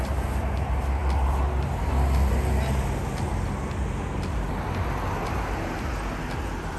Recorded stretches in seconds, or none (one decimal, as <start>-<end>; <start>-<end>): 0.0-6.8